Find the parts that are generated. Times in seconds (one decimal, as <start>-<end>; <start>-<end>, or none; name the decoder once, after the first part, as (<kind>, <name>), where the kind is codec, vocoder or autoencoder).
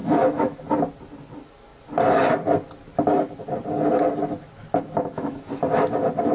0.0-0.6 (autoencoder, DAC-VAE); 4.7-5.5